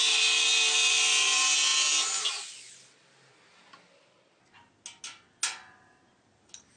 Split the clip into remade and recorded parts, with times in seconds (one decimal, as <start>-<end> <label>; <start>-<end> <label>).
0.0-6.8 recorded